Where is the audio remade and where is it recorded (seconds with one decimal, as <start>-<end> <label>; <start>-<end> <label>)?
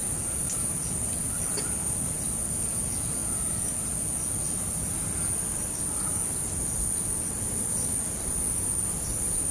0.0-3.2 remade; 3.2-4.7 recorded; 4.7-9.5 remade